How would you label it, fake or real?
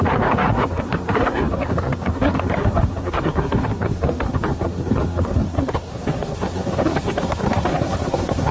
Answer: fake